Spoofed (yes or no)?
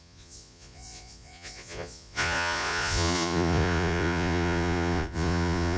yes